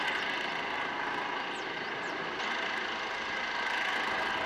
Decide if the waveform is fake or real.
real